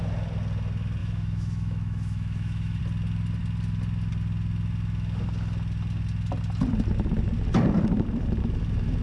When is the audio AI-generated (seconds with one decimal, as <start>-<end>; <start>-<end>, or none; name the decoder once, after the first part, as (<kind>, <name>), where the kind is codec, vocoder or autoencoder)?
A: 1.0-2.8 (autoencoder, DAC-VAE)